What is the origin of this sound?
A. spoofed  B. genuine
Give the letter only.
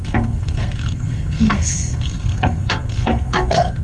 A